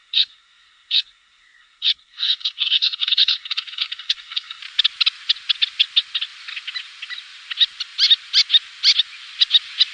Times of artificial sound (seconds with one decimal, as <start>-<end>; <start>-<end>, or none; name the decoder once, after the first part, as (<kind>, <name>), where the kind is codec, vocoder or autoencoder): 0.0-4.6 (codec, SNAC)